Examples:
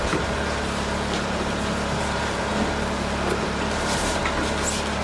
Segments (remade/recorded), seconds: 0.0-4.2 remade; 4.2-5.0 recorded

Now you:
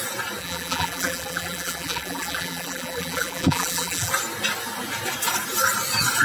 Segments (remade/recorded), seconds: 0.0-0.4 recorded; 0.4-4.1 remade; 4.1-6.2 recorded

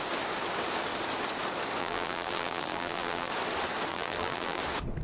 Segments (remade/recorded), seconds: 0.0-1.8 recorded; 1.8-3.3 remade; 3.3-3.9 recorded; 3.9-4.6 remade; 4.6-5.0 recorded